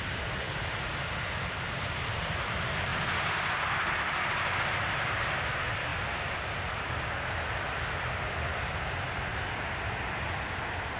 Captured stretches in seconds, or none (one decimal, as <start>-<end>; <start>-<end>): 0.0-9.3; 9.8-11.0